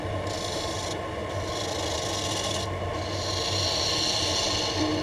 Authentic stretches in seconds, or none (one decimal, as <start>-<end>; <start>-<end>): 0.0-5.0